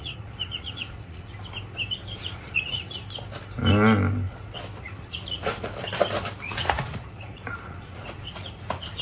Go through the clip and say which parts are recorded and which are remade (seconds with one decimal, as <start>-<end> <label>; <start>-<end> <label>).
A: 0.0-1.3 remade; 1.3-2.2 recorded; 2.2-3.0 remade; 3.0-4.8 recorded; 4.8-5.7 remade; 5.7-6.4 recorded; 6.4-9.0 remade